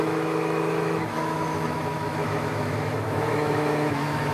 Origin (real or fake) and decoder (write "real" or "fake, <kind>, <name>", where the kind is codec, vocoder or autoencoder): fake, autoencoder, DAC-VAE